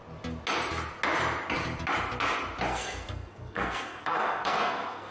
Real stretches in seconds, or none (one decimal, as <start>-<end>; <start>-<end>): 0.0-2.7